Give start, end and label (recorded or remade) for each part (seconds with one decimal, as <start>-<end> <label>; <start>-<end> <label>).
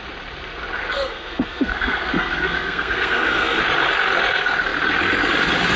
0.0-0.8 recorded; 0.8-3.6 remade; 3.6-5.8 recorded